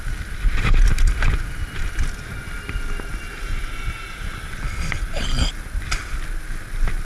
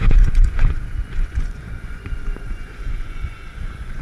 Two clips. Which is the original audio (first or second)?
first